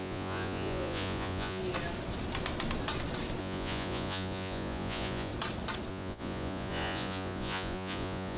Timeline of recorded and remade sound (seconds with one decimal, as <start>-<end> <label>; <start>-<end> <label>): 0.0-1.6 remade; 1.6-3.4 recorded; 3.4-5.3 remade; 5.3-5.9 recorded; 5.9-8.4 remade